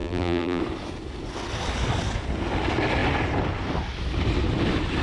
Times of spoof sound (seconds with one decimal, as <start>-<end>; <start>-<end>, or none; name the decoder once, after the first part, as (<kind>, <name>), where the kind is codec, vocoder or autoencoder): 0.0-0.6 (vocoder, BigVGAN v2)